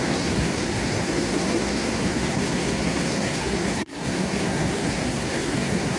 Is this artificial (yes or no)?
yes